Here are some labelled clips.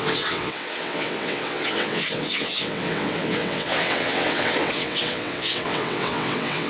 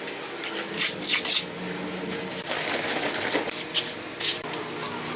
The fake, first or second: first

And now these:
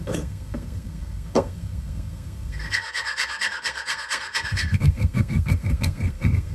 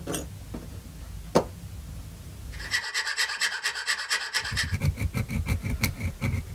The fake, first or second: first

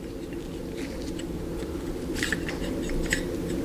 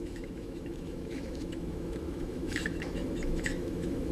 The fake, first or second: second